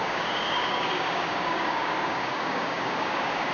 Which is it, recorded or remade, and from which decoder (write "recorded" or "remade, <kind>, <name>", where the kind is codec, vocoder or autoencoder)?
remade, codec, DAC